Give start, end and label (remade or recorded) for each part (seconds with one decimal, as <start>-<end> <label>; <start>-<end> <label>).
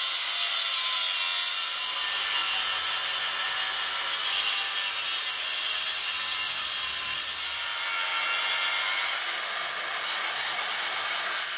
0.0-11.6 recorded